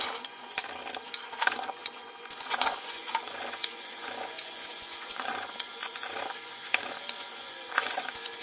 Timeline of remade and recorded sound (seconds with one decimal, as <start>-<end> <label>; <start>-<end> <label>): 0.0-0.6 remade; 0.6-1.3 recorded; 1.3-8.4 remade